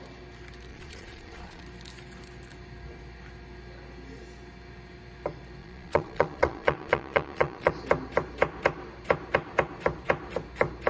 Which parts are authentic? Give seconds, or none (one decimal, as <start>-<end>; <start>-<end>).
0.0-0.7; 1.6-5.6; 7.7-10.9